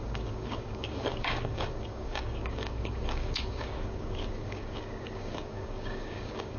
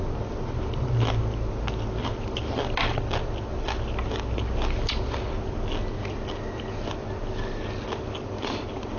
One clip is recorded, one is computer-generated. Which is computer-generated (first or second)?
first